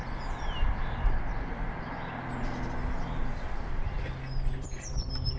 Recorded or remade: recorded